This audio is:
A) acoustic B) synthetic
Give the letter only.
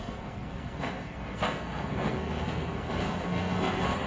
B